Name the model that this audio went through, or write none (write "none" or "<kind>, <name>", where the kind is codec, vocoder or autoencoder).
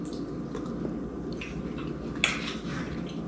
none